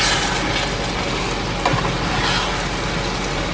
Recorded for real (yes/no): yes